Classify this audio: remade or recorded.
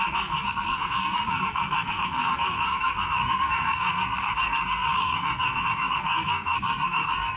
remade